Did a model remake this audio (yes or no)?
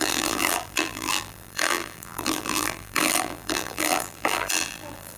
yes